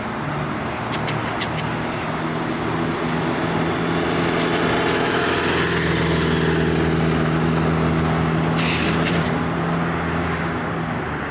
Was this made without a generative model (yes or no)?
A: yes